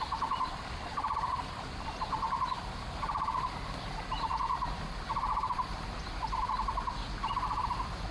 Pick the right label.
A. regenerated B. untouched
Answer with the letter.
B